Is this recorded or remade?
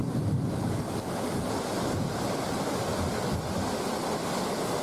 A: recorded